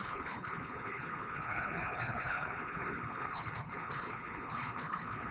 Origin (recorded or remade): remade